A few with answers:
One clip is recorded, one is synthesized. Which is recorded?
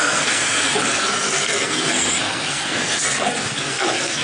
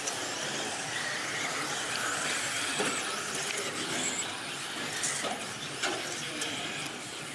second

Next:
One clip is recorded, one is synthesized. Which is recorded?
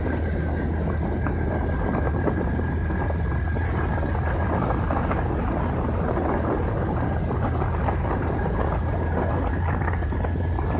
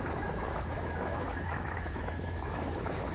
first